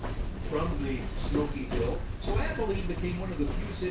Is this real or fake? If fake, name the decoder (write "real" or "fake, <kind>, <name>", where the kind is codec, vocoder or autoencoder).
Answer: real